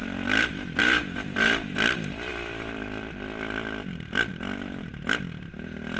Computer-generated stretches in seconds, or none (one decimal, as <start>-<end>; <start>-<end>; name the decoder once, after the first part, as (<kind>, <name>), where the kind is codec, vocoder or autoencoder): 0.0-4.9 (vocoder, BigVGAN v2)